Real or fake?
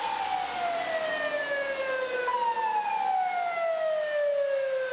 real